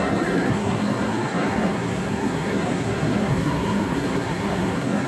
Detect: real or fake fake